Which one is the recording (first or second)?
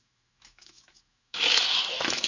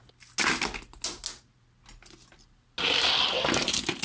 second